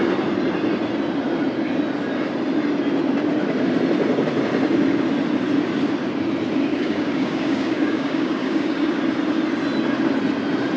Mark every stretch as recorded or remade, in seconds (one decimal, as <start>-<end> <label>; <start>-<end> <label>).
0.0-6.7 recorded; 6.7-9.0 remade; 9.0-10.8 recorded